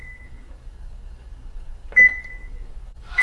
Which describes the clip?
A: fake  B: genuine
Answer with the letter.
A